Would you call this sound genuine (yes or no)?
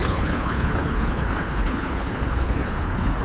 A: no